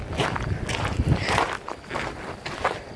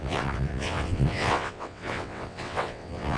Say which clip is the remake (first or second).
second